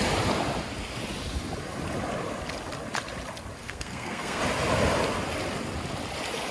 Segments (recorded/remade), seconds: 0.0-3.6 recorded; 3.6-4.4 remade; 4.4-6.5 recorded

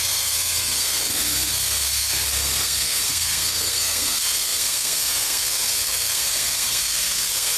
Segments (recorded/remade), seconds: 0.0-7.6 remade

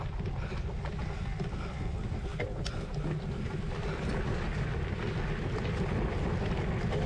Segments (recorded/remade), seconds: 0.0-7.1 recorded

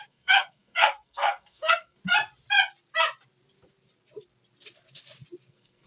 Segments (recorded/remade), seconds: 0.0-2.0 remade; 2.0-5.5 recorded; 5.5-5.9 remade

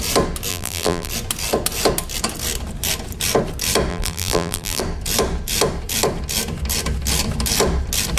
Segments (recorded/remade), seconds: 0.0-0.5 recorded; 0.5-1.1 remade; 1.1-3.9 recorded; 3.9-4.8 remade; 4.8-8.2 recorded

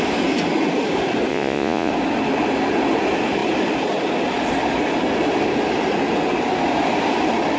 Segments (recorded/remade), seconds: 0.0-1.3 recorded; 1.3-1.9 remade; 1.9-7.6 recorded

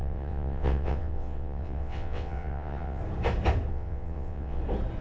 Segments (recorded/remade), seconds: 0.0-3.0 remade; 3.0-3.7 recorded; 3.7-4.6 remade; 4.6-5.0 recorded